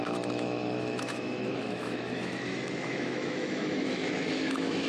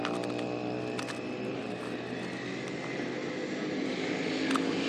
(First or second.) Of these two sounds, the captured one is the second